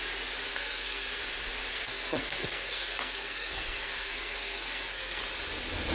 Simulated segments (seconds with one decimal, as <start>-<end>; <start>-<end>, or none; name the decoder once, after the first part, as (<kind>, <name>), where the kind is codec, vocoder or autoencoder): 0.5-1.2 (codec, SNAC); 1.7-5.2